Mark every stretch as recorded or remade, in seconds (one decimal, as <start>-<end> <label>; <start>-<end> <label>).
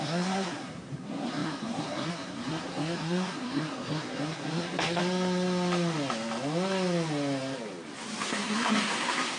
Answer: 0.0-5.0 remade; 5.0-8.2 recorded; 8.2-9.4 remade